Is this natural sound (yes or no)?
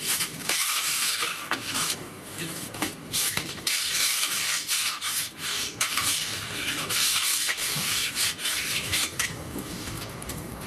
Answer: no